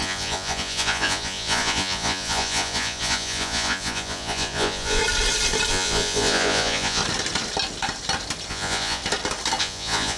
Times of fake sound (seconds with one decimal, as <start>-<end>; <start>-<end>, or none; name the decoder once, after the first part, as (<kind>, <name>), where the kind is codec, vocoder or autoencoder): 0.0-5.0 (vocoder, Vocos); 5.7-7.0; 8.5-9.0; 9.6-10.2